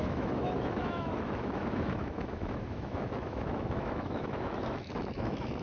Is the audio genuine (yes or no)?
no